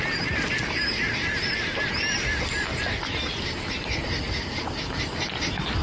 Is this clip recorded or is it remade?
recorded